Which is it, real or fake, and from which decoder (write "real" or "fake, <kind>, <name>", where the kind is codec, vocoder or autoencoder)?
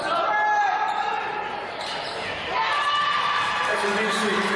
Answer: real